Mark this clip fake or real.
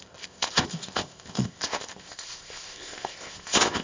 fake